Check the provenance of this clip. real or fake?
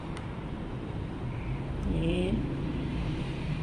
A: fake